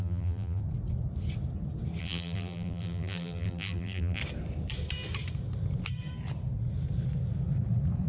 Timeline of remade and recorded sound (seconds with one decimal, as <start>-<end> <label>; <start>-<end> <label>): 0.0-0.6 remade; 0.6-2.0 recorded; 2.0-4.2 remade; 4.2-8.1 recorded